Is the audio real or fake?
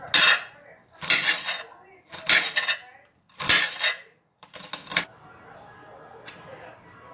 real